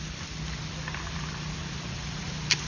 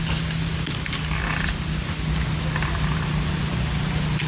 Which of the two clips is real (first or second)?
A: second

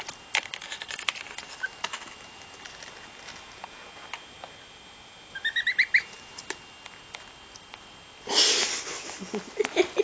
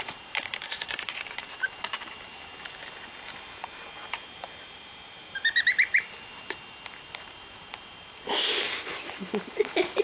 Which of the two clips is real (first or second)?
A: first